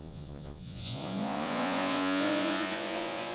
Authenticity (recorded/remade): remade